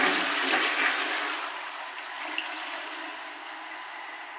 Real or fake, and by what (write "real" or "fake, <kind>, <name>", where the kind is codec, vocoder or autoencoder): real